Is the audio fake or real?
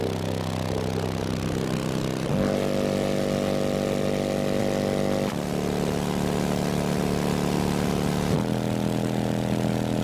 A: real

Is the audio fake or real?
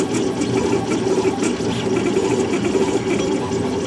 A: real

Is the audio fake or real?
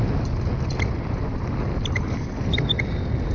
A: real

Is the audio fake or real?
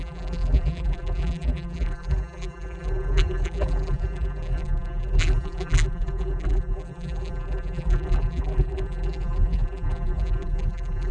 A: fake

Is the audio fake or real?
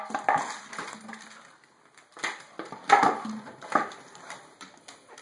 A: fake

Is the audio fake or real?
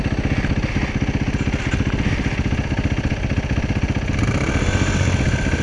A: real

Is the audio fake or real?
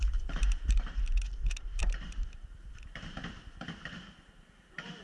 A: fake